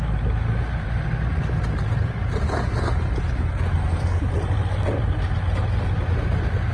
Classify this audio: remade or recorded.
recorded